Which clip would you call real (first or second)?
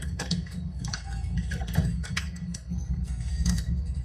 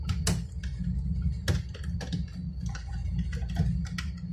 second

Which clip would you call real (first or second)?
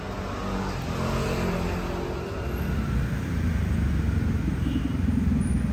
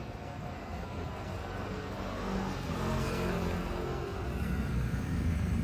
first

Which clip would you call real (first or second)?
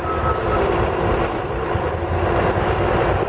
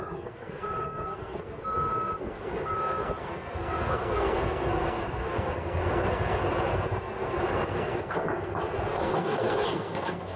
first